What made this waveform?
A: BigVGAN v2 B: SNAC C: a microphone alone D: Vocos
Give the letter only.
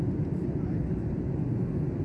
C